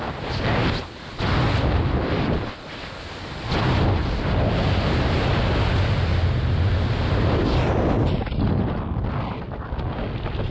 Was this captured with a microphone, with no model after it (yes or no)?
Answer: yes